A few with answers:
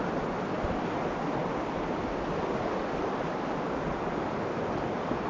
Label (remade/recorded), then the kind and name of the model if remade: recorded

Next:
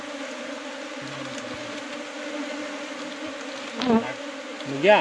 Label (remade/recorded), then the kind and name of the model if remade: recorded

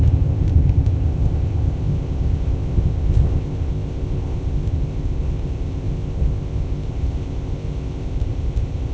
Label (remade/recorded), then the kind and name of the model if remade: remade, codec, ZipCodec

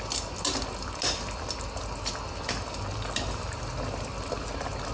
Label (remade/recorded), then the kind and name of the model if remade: recorded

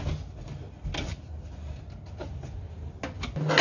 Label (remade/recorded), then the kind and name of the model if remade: recorded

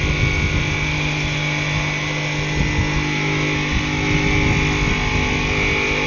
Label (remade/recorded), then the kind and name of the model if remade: recorded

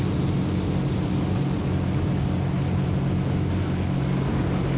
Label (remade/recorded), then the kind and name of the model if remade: recorded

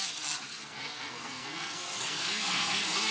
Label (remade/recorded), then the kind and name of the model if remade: remade, codec, SNAC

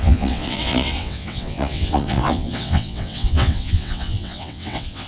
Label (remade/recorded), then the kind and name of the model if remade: remade, vocoder, WaveNeXt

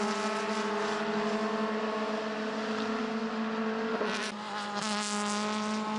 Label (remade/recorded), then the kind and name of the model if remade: recorded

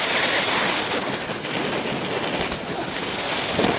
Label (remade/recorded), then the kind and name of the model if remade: recorded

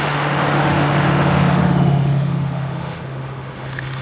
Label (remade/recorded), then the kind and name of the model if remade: remade, autoencoder, DAC-VAE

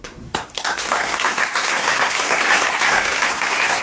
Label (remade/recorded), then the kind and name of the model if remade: remade, codec, SNAC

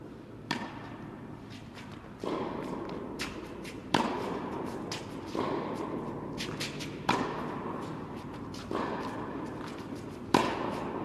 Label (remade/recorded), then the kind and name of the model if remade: remade, vocoder, BigVGAN v2